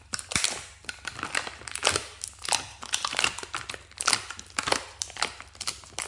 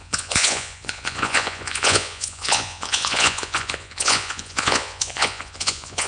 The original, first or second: first